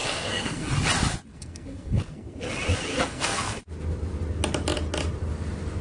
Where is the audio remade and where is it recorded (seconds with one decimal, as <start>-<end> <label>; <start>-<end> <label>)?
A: 0.0-0.7 remade; 0.7-1.3 recorded; 1.3-2.4 remade; 2.4-2.9 recorded; 2.9-3.6 remade; 3.6-5.8 recorded